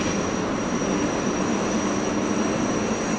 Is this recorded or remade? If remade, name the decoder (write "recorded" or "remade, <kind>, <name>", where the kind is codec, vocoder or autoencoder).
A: recorded